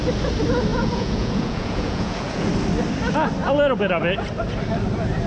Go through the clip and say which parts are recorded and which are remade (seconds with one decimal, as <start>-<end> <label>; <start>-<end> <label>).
0.0-0.7 recorded; 0.7-2.5 remade; 2.5-5.3 recorded